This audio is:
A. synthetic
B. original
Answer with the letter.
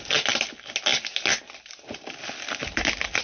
B